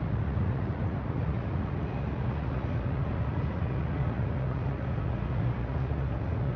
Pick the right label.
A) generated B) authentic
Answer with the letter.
A